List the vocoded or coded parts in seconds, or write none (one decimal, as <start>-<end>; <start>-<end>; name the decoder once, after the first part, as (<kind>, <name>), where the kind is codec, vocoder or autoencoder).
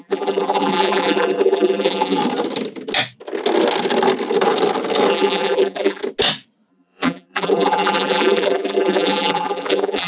0.0-2.2 (vocoder, BigVGAN v2); 5.1-6.0; 6.7-10.1